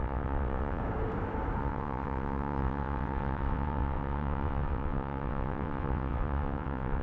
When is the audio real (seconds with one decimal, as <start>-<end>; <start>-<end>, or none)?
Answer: 0.8-1.6